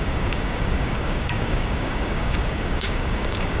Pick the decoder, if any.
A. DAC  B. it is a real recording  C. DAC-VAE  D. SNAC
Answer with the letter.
A